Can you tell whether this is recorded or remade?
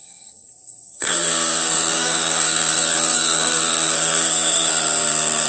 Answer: remade